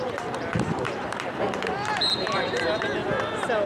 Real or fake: fake